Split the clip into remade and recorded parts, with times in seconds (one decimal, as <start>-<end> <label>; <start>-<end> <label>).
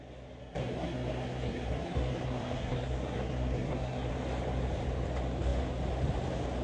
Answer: 0.0-0.4 recorded; 0.4-4.1 remade; 4.1-6.6 recorded